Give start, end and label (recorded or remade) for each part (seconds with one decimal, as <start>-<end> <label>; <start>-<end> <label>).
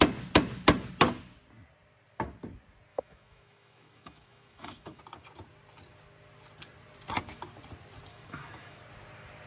0.0-2.9 recorded; 2.9-5.0 remade; 5.0-8.1 recorded; 8.1-8.8 remade; 8.8-9.5 recorded